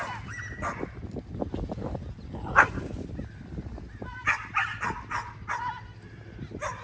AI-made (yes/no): no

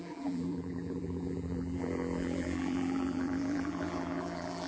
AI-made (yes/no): yes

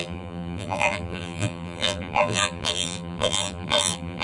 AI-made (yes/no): yes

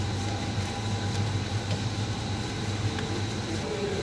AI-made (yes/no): no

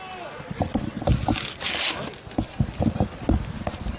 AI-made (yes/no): no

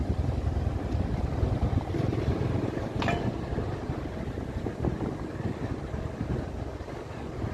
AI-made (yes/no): no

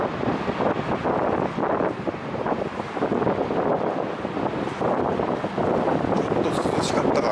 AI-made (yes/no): no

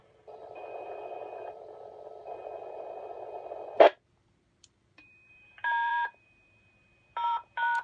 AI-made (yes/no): yes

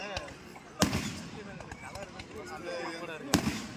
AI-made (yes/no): no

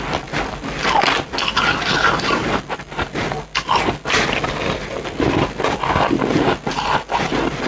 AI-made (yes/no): no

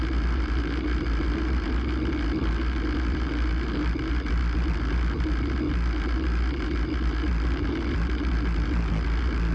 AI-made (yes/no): no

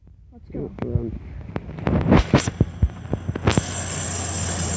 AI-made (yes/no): no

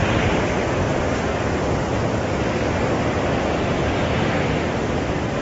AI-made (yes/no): no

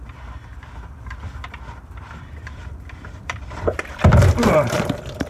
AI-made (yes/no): yes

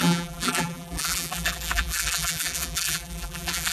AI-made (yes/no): yes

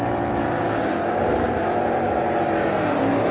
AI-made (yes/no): yes